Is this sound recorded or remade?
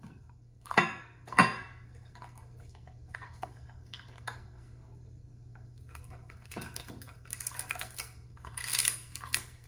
remade